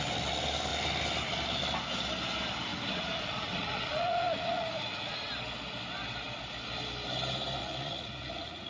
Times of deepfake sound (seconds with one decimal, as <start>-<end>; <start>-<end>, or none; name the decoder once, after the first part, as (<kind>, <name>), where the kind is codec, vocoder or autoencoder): 2.7-5.3 (vocoder, Vocos); 7.6-8.7